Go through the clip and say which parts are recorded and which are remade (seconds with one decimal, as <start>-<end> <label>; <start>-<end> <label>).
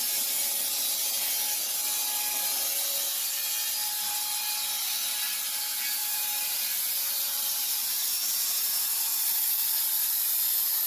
0.0-6.0 recorded; 6.0-8.0 remade; 8.0-10.9 recorded